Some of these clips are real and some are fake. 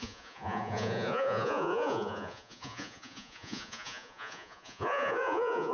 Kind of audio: fake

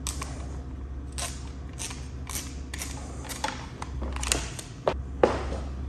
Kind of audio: real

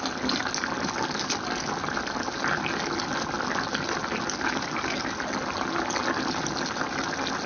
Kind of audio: real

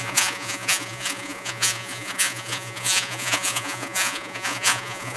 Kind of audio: fake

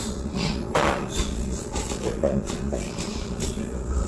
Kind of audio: fake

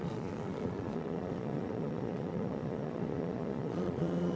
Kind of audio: fake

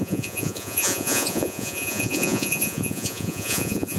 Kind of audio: fake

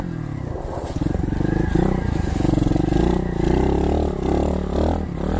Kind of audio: real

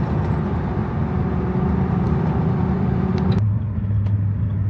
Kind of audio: real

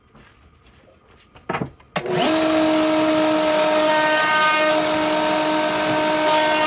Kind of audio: real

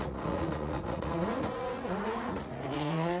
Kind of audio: fake